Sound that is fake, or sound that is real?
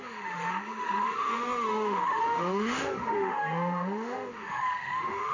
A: fake